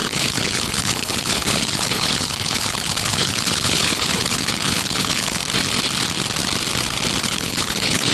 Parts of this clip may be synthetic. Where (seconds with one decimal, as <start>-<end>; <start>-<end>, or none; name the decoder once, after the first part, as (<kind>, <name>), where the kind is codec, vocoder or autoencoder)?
0.0-5.4 (codec, HILCodec); 7.2-8.1

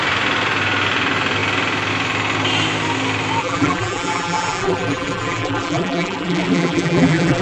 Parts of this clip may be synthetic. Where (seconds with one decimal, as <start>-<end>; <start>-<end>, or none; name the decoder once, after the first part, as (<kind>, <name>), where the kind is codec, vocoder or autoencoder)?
3.4-7.4 (vocoder, BigVGAN v2)

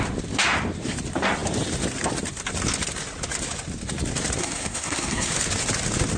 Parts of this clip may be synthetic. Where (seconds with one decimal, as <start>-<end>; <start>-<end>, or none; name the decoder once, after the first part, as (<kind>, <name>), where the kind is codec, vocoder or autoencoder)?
4.4-5.3 (codec, SNAC)

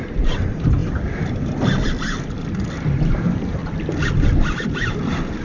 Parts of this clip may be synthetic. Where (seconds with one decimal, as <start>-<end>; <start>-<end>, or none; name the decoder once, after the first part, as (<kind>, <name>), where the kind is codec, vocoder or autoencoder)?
0.0-0.8 (vocoder, BigVGAN v2); 3.1-3.6; 4.7-5.4

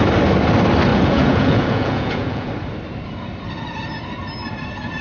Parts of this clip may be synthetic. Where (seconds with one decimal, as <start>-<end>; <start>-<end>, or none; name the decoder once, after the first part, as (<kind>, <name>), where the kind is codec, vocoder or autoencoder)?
0.9-2.5 (vocoder, Vocos)